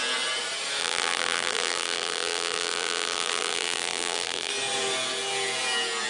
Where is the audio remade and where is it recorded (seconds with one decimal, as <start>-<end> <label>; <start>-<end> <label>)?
0.0-0.8 recorded; 0.8-4.5 remade; 4.5-6.1 recorded